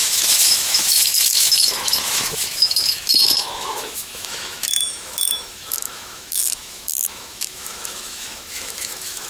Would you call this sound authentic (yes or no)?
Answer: no